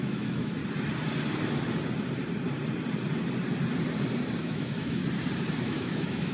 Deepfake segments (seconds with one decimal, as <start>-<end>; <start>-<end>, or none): 0.0-0.6; 4.4-5.0; 5.6-6.3